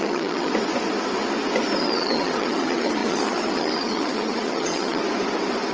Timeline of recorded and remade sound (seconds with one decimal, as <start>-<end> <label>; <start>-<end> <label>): 0.0-0.5 remade; 0.5-1.8 recorded; 1.8-5.0 remade; 5.0-5.7 recorded